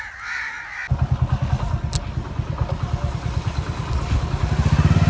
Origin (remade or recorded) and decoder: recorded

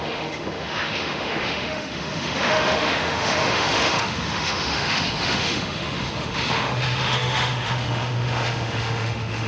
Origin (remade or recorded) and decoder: remade, autoencoder, DAC-VAE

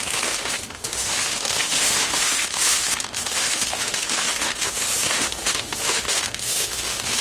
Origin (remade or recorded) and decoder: remade, autoencoder, DAC-VAE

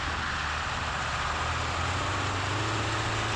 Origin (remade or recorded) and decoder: recorded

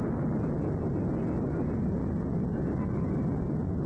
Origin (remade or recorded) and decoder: recorded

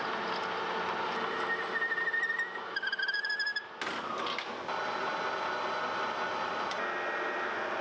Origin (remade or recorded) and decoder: recorded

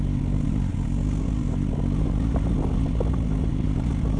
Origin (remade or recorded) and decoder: recorded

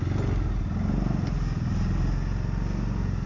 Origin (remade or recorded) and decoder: recorded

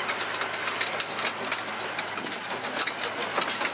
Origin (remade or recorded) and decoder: recorded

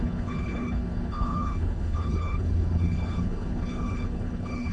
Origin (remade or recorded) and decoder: remade, codec, HILCodec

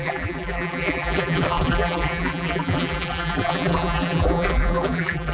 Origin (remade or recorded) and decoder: remade, vocoder, BigVGAN v2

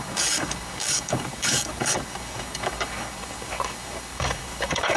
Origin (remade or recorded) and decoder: remade, codec, DAC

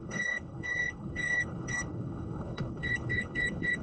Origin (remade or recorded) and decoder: remade, codec, HILCodec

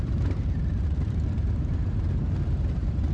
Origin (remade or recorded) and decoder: remade, vocoder, BigVGAN v2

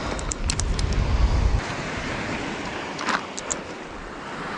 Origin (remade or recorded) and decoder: recorded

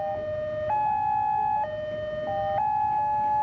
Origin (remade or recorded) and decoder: recorded